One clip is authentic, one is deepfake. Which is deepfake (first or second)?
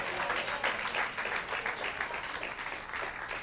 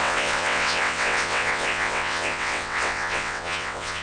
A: second